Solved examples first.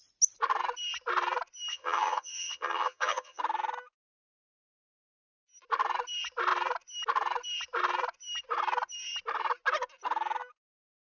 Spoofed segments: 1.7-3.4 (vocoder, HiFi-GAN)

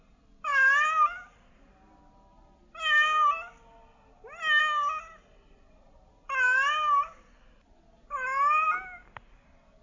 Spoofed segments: none

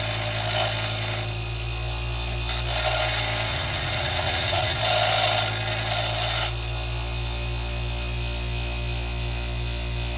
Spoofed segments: 3.5-4.8 (vocoder, Vocos)

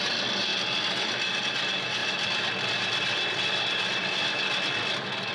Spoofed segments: none

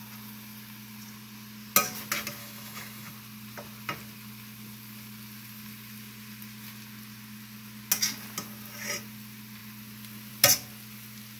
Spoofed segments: 2.4-3.1 (autoencoder, DAC-VAE)

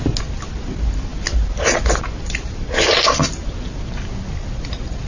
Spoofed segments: none

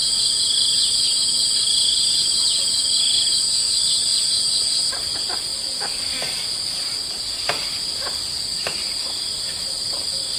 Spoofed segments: none

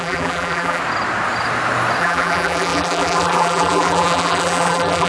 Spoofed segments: 0.0-0.8 (vocoder, BigVGAN v2); 2.0-5.1